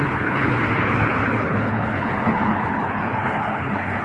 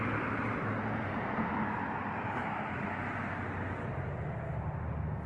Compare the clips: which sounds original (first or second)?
second